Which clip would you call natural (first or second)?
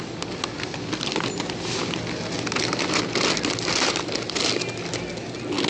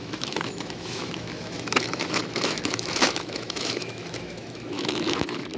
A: first